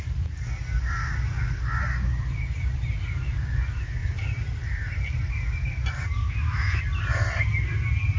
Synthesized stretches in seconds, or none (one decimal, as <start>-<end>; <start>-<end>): 6.2-6.8